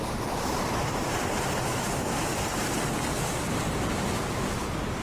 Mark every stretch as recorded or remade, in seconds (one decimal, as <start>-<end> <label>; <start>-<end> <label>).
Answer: 0.0-1.7 recorded; 1.7-2.3 remade; 2.3-5.0 recorded